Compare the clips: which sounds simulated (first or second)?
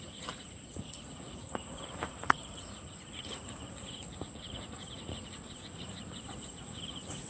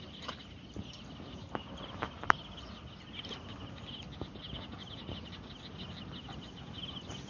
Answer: first